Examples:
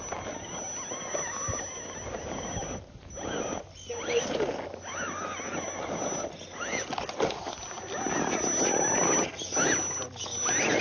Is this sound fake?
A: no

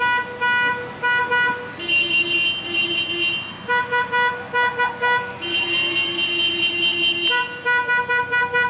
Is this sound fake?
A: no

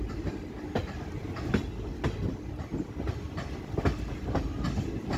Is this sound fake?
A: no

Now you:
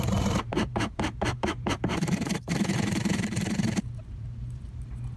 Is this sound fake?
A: yes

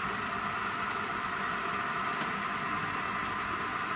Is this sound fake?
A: yes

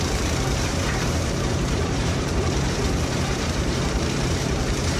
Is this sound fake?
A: yes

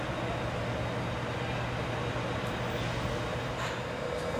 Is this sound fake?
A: no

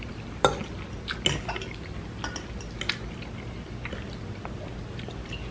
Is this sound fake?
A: no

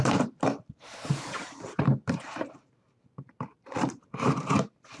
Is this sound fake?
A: yes